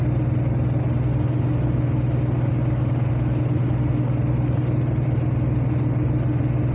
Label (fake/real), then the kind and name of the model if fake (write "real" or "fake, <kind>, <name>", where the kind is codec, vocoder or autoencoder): real